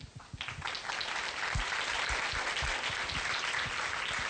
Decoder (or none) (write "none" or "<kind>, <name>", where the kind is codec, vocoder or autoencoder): none